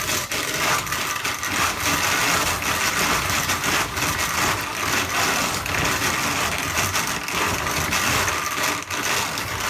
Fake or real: real